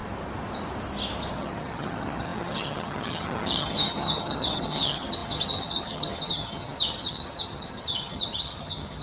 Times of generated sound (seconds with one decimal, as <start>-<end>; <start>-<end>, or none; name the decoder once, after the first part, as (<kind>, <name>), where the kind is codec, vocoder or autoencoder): 1.3-9.0 (vocoder, HiFi-GAN)